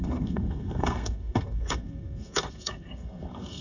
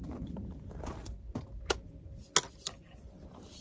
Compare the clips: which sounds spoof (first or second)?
first